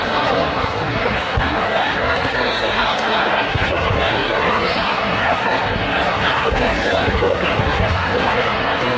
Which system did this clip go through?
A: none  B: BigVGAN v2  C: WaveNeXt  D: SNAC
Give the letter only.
D